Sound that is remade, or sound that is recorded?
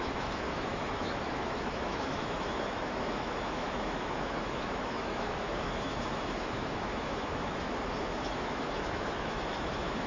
remade